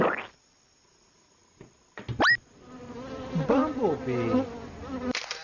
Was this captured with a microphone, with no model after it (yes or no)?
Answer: yes